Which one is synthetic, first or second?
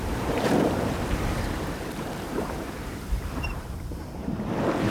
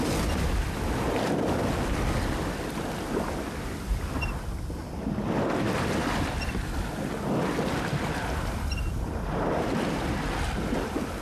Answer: first